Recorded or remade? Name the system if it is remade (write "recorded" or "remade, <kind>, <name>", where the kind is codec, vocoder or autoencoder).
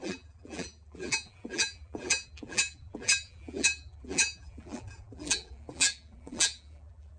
remade, vocoder, BigVGAN v2